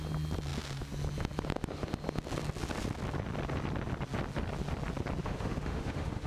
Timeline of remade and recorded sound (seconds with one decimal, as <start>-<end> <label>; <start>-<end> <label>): 0.0-5.2 recorded; 5.2-6.3 remade